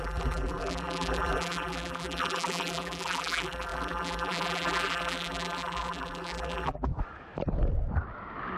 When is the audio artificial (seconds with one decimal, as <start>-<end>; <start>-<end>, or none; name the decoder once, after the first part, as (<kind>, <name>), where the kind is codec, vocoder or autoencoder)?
0.0-6.9 (vocoder, BigVGAN v2)